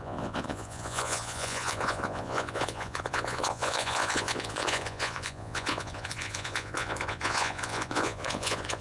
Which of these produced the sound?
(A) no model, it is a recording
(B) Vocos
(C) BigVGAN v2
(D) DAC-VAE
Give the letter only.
B